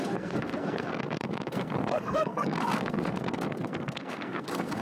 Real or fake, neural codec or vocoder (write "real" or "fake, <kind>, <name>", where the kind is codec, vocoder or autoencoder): fake, codec, SNAC